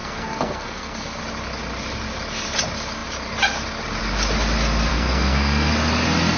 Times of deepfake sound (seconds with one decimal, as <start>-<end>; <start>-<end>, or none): 0.0-1.2; 4.9-5.7